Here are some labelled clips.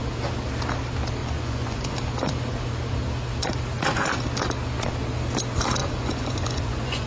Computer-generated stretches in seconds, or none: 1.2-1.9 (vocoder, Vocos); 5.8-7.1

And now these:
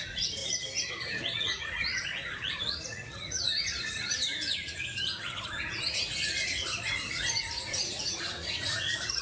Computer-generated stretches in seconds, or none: 0.0-0.4 (vocoder, Vocos); 0.9-9.2

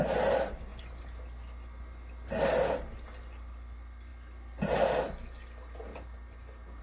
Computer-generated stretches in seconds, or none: 5.9-6.8 (vocoder, BigVGAN v2)

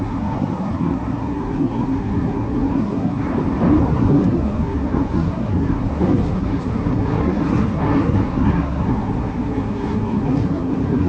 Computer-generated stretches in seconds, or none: 0.0-3.3 (codec, SNAC); 3.8-11.1

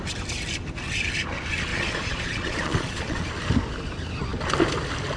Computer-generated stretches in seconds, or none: 1.7-3.3 (vocoder, Vocos)

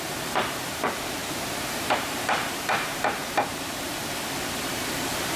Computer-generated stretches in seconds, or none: 0.0-4.0 (vocoder, BigVGAN v2); 4.7-5.4

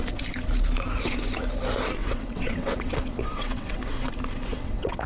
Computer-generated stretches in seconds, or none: 2.0-4.1 (vocoder, WaveNeXt); 4.5-5.1

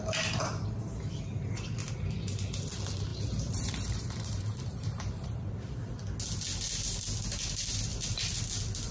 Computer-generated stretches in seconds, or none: 3.1-5.9 (vocoder, BigVGAN v2)